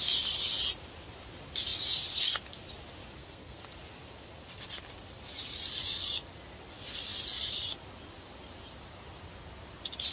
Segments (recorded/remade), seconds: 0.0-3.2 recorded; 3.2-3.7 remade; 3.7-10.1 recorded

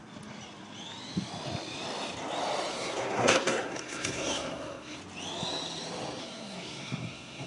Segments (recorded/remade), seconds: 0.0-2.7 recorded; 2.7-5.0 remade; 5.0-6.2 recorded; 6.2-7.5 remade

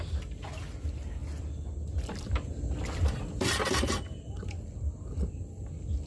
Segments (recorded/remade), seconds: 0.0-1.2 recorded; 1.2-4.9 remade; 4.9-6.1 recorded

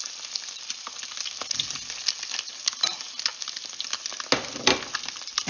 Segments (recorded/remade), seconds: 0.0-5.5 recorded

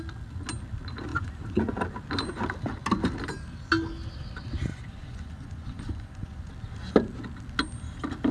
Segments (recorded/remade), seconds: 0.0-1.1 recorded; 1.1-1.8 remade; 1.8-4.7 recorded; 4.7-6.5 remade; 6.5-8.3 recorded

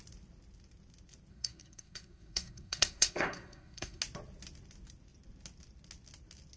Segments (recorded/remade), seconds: 0.0-1.3 recorded; 1.3-4.0 remade; 4.0-6.6 recorded

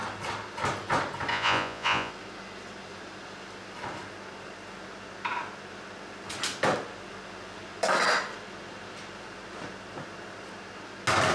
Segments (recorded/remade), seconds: 0.0-1.3 recorded; 1.3-2.1 remade; 2.1-11.3 recorded